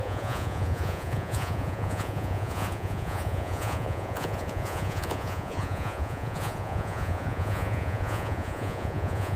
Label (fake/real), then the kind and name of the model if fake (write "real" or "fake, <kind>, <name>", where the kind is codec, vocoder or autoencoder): fake, vocoder, Vocos